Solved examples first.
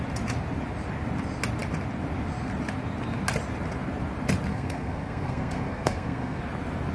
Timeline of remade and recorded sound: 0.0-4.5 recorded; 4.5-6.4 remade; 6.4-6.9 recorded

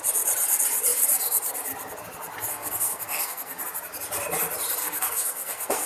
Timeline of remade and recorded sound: 0.0-2.5 recorded; 2.5-3.6 remade; 3.6-4.8 recorded; 4.8-5.9 remade

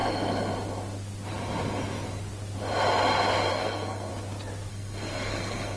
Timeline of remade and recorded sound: 0.0-3.5 recorded; 3.5-4.1 remade; 4.1-4.7 recorded; 4.7-5.8 remade

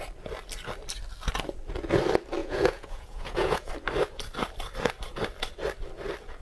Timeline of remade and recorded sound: 0.0-2.4 recorded; 2.4-3.7 remade; 3.7-6.4 recorded

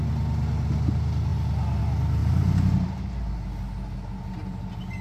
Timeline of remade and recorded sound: 0.0-5.0 recorded